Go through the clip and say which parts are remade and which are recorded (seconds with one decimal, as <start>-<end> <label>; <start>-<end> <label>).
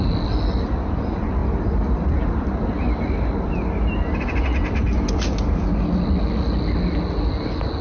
0.0-7.8 recorded